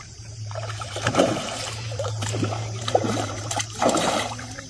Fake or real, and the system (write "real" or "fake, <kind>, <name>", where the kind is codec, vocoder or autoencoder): fake, vocoder, BigVGAN v2